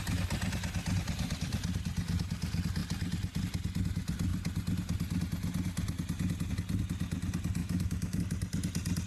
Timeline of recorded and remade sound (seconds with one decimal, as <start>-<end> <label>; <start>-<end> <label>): 0.0-7.6 recorded; 7.6-8.2 remade; 8.2-9.1 recorded